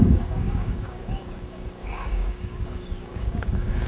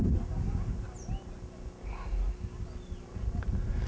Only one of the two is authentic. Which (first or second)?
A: second